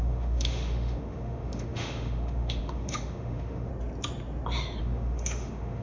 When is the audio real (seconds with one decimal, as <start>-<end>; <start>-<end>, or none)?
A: 3.7-4.8